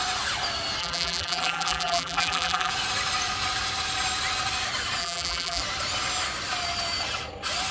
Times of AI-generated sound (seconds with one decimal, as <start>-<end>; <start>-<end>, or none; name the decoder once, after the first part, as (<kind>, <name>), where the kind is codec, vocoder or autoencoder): 0.8-2.7 (vocoder, BigVGAN v2); 5.0-5.6